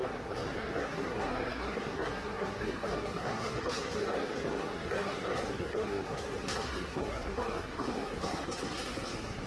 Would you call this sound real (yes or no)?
no